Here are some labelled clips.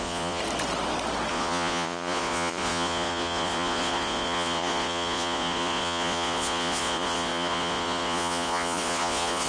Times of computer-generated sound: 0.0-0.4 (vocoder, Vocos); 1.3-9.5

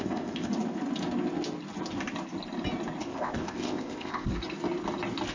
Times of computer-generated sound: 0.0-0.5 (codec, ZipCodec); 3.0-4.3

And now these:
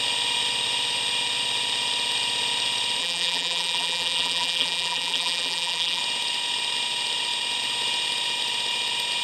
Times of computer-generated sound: 3.0-6.0 (vocoder, BigVGAN v2)

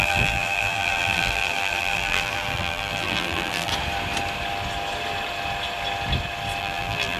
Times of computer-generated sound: 0.0-3.7 (vocoder, BigVGAN v2); 6.6-7.2

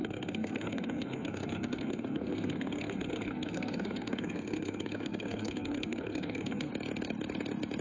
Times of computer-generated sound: 0.0-6.7 (codec, SNAC)